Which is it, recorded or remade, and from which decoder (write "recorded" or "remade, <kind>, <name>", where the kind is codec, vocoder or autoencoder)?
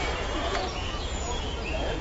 remade, vocoder, Vocos